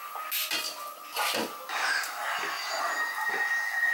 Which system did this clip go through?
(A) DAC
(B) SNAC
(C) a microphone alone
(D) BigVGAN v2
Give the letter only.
C